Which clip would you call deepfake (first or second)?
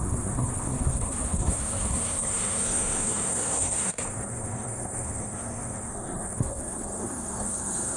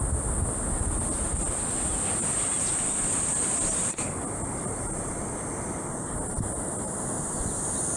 first